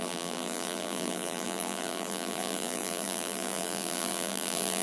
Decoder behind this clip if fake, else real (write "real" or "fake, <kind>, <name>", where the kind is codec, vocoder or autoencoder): fake, vocoder, BigVGAN v2